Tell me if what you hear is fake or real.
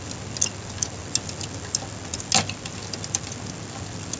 real